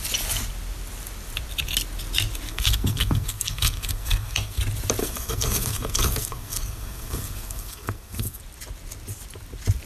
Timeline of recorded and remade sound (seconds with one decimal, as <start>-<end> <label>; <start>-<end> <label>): 0.0-2.5 recorded; 2.5-4.6 remade; 4.6-5.0 recorded; 5.0-8.4 remade; 8.4-9.9 recorded